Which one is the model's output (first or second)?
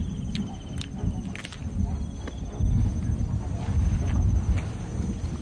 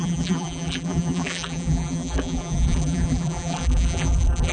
second